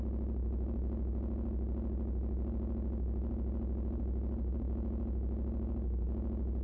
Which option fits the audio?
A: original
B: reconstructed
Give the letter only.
A